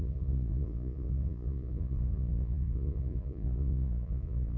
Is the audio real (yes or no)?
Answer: no